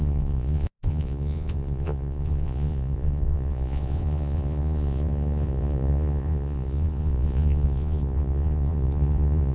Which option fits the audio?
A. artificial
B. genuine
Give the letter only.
A